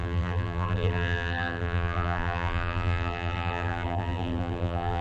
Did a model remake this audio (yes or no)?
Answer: yes